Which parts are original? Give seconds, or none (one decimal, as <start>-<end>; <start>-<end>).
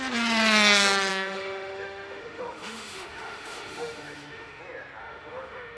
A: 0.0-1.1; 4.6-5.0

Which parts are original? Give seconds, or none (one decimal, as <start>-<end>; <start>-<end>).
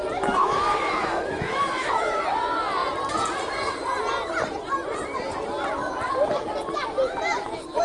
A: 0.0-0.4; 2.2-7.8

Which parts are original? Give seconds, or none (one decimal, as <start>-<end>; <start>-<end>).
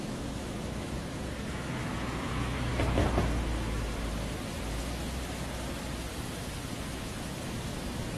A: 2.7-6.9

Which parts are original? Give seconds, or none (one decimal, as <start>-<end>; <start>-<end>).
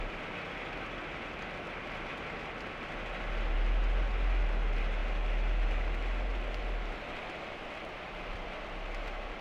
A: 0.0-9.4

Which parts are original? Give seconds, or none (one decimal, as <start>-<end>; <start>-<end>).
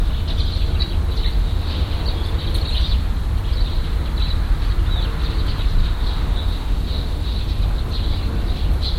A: 0.0-1.4; 2.0-5.8; 7.4-9.0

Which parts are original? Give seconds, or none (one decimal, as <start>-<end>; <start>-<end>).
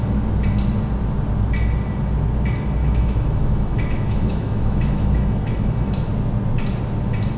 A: 0.0-2.8; 6.1-7.4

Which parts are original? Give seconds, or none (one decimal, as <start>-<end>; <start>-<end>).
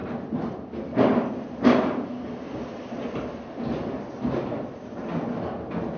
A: 0.0-6.0